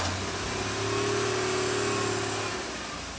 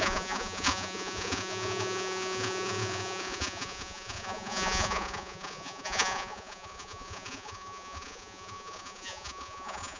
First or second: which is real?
first